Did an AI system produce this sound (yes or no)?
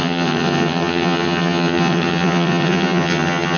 yes